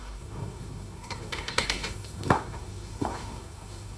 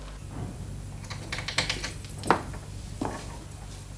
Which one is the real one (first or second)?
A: second